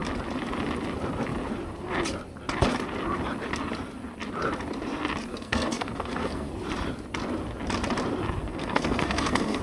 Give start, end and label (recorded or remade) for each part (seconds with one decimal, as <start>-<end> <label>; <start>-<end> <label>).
0.0-5.3 recorded; 5.3-6.5 remade; 6.5-8.4 recorded; 8.4-9.6 remade